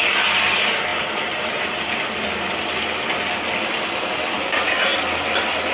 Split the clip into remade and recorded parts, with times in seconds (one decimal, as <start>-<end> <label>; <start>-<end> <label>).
0.0-0.9 recorded; 0.9-3.2 remade; 3.2-5.7 recorded